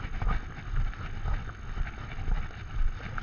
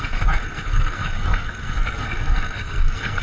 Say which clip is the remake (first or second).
second